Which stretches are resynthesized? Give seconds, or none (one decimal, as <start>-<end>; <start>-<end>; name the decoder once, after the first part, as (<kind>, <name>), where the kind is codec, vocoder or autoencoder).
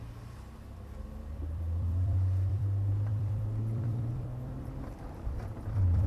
0.0-6.1 (vocoder, BigVGAN v2)